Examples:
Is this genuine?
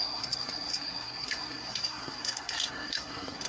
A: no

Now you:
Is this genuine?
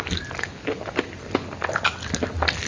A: yes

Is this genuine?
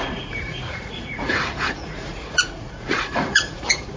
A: no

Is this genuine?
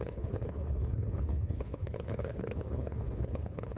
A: no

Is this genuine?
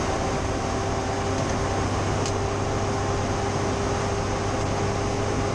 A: yes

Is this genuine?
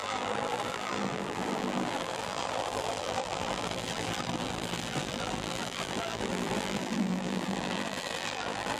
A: no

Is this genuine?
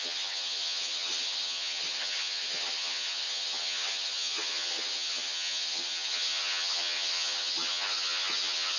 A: no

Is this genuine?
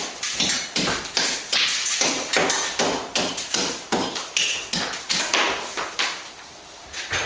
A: yes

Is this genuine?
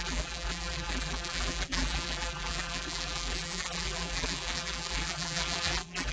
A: no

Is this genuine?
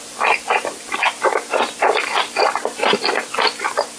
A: no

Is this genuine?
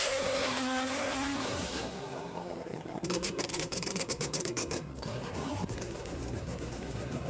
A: no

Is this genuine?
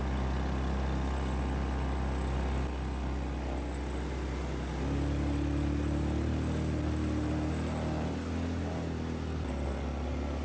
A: yes